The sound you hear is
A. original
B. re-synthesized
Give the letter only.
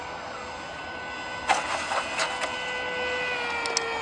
A